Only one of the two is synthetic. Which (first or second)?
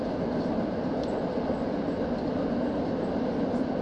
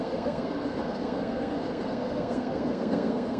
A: second